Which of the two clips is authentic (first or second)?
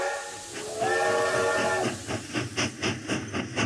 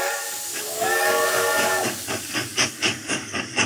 first